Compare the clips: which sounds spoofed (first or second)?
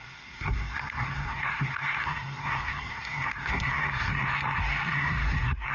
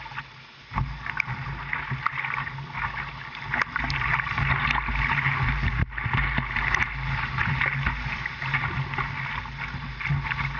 first